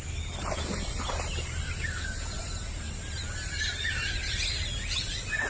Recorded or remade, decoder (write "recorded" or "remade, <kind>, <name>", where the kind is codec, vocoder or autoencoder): recorded